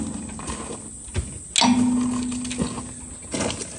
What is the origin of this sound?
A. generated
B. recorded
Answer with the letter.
B